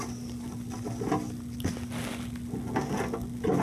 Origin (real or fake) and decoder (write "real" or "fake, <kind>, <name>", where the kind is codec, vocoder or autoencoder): real